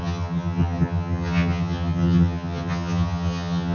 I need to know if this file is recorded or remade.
remade